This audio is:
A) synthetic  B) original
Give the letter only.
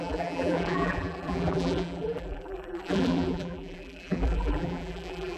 A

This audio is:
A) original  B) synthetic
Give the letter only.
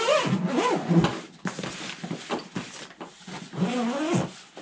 A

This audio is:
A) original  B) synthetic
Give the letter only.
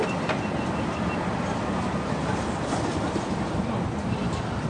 B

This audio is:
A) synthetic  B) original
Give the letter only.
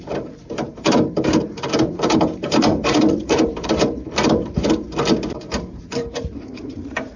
A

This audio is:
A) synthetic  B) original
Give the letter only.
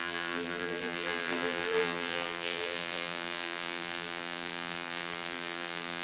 A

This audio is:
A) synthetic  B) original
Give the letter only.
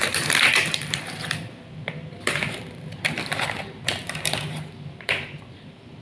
A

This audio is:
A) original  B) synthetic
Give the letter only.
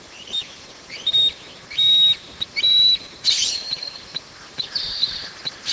B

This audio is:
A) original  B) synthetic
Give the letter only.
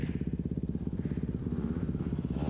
A